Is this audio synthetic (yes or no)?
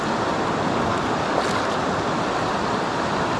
no